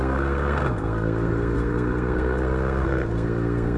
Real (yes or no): no